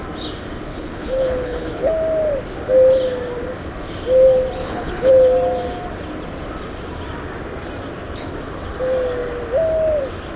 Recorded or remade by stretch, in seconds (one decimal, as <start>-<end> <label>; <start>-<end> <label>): 0.0-0.7 recorded; 0.7-1.9 remade; 1.9-4.6 recorded; 4.6-5.1 remade; 5.1-10.4 recorded